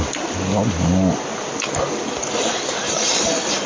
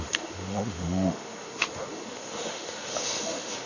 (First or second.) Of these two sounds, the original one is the first